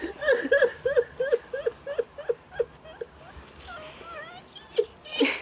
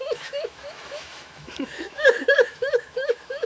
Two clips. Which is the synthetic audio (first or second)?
second